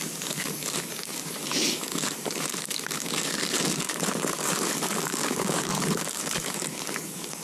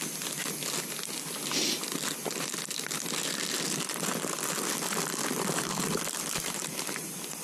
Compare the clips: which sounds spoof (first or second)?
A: first